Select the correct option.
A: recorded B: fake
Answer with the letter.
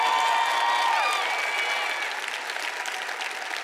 A